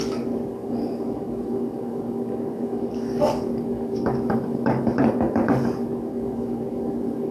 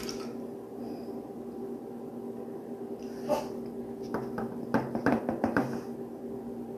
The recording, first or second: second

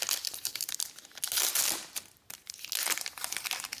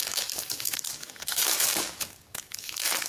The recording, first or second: first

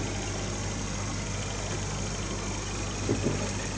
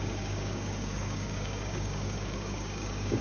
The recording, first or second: first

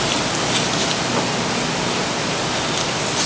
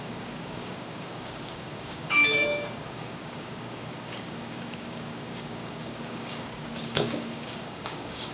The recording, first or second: first